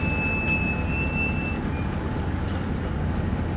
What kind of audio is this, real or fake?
real